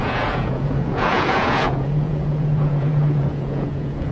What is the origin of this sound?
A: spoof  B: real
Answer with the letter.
A